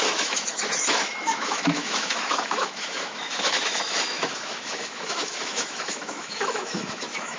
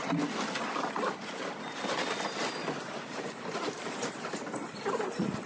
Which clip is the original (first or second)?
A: second